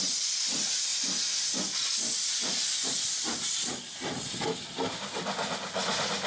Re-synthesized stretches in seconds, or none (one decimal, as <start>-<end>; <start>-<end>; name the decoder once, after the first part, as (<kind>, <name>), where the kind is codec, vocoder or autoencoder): none